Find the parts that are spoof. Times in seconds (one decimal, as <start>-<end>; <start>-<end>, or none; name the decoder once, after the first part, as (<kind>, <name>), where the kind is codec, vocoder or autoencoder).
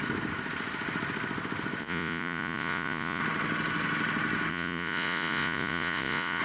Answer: 1.8-3.2 (vocoder, Vocos); 4.5-6.4